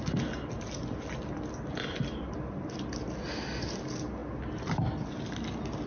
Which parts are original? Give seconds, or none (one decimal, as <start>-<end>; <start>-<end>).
0.0-5.9